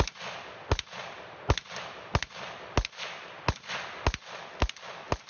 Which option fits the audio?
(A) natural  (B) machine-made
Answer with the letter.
A